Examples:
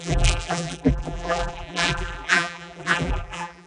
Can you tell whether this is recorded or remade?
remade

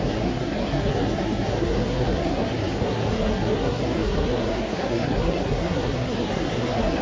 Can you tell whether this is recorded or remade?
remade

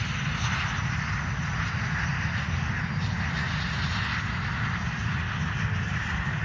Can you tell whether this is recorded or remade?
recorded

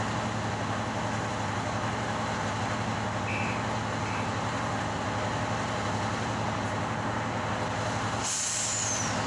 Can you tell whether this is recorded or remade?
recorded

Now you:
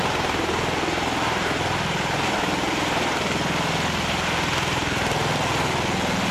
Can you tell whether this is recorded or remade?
recorded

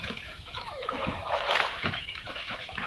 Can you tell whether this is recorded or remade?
remade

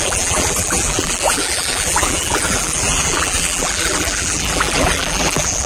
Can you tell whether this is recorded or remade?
remade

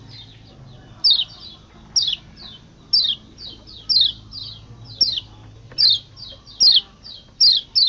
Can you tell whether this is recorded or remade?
recorded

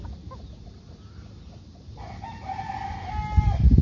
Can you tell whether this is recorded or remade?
recorded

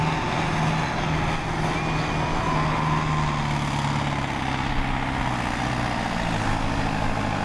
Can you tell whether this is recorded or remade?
recorded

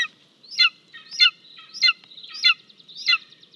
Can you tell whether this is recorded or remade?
recorded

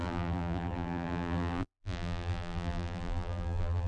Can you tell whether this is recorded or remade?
remade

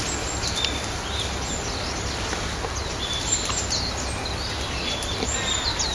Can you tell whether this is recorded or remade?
recorded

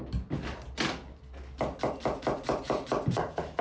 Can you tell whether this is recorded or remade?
recorded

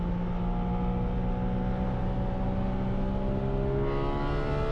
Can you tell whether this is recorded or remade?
recorded